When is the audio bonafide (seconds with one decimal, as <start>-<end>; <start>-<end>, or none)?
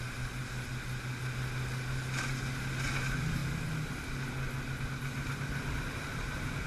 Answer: 0.0-6.7